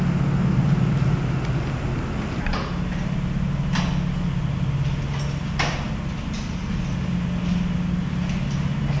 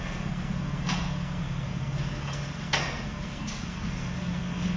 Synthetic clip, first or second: second